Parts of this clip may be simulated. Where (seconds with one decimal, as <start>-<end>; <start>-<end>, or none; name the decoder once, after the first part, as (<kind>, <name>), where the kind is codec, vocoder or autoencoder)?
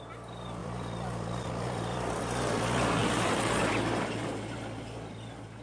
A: 0.6-2.2 (vocoder, BigVGAN v2); 3.0-3.6